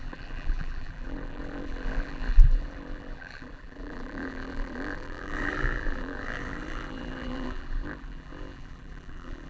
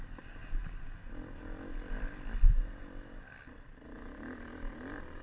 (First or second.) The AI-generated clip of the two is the first